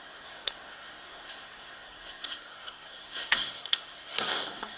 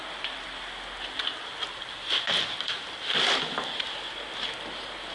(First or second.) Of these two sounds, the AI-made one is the first